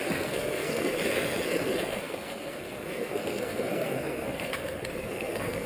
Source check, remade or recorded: remade